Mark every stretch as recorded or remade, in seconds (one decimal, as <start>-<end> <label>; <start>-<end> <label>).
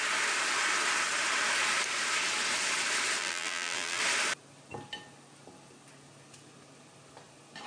0.0-3.2 recorded; 3.2-4.0 remade; 4.0-7.7 recorded